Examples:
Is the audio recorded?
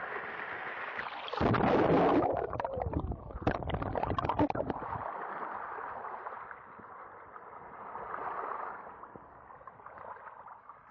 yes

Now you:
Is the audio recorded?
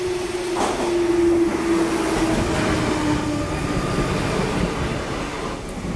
yes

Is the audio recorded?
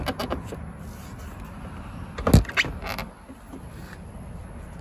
yes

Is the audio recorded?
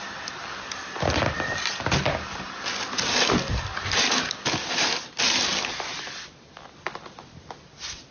yes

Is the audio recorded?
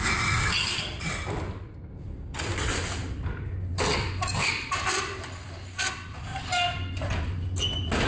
yes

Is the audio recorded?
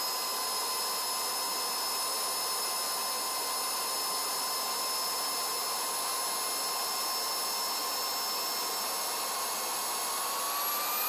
yes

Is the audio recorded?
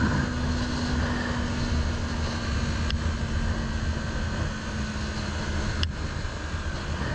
yes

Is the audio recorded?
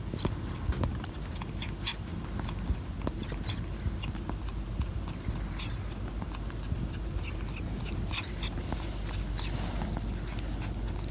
yes